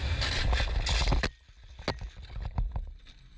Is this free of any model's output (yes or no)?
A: yes